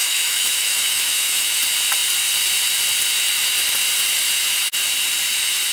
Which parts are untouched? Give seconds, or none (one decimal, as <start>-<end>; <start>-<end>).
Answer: 1.6-5.7